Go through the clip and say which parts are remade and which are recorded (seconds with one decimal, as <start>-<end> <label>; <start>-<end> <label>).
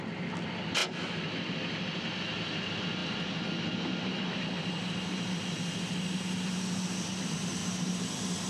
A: 0.0-7.6 recorded; 7.6-8.5 remade